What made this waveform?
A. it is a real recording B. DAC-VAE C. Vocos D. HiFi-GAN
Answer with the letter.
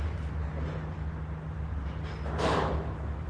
A